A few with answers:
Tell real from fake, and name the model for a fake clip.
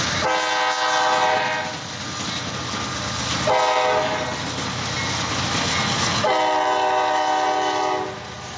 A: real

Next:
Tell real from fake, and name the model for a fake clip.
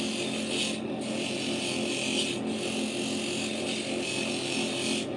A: real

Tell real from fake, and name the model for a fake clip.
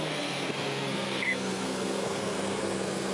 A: fake, codec, SNAC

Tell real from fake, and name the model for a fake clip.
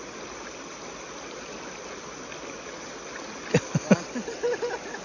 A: real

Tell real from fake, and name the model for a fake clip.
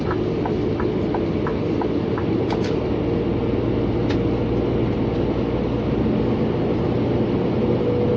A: real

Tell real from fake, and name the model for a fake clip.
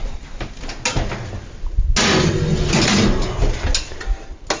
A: real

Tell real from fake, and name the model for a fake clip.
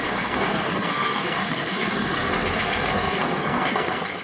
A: fake, codec, SNAC